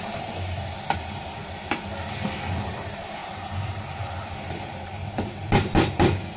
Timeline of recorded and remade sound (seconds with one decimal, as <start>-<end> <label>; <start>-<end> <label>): 0.0-1.9 remade; 1.9-2.5 recorded; 2.5-6.4 remade